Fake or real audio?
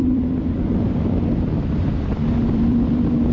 fake